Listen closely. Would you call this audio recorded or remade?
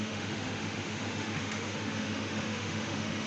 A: remade